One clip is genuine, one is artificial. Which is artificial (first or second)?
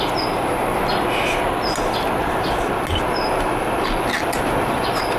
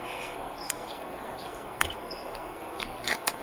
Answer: second